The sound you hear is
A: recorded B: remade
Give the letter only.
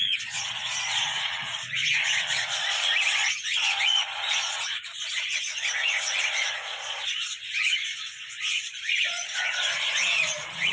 B